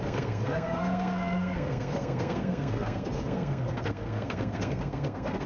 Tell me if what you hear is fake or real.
fake